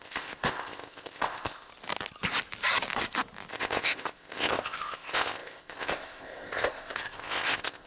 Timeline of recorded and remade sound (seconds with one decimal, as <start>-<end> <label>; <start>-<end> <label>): 0.0-1.7 remade; 1.7-3.5 recorded; 3.5-7.9 remade